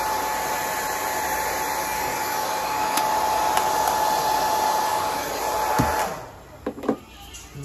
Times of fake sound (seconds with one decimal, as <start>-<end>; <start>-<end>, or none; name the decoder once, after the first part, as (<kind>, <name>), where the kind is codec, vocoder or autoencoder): 1.8-3.1 (codec, DAC); 4.9-5.4